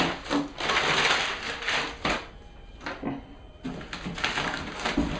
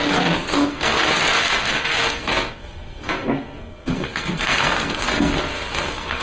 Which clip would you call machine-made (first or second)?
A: second